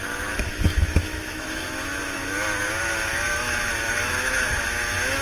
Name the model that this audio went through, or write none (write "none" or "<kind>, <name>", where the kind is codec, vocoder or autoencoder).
autoencoder, DAC-VAE